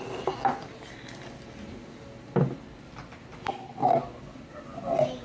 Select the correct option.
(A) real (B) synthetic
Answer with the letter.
A